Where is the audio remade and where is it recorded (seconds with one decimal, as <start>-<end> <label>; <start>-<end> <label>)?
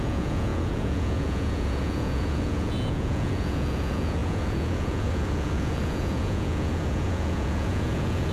0.0-8.3 remade